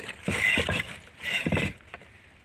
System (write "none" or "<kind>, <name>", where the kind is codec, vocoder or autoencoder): none